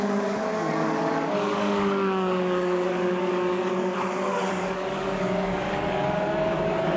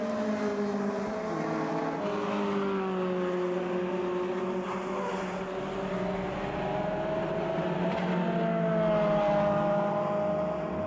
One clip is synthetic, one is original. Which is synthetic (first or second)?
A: first